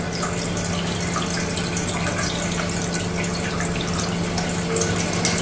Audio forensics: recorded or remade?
recorded